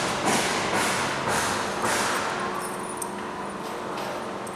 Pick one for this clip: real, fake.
real